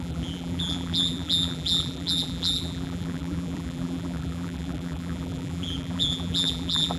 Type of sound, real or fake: fake